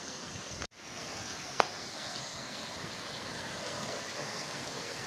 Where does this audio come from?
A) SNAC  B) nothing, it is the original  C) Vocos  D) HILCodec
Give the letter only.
A